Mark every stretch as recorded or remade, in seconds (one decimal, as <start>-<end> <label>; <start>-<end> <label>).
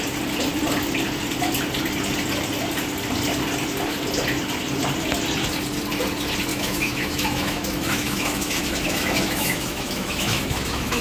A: 0.0-6.5 recorded; 6.5-11.0 remade